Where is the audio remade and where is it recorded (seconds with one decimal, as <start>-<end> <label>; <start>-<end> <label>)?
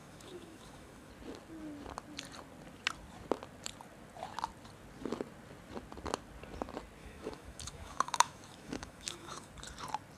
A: 0.0-1.1 remade; 1.1-7.0 recorded; 7.0-9.5 remade; 9.5-10.2 recorded